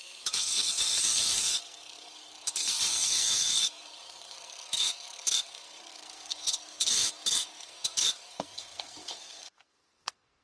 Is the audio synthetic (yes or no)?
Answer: yes